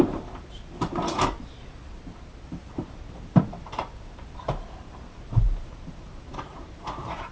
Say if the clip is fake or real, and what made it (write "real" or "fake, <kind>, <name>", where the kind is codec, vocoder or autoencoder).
fake, vocoder, BigVGAN v2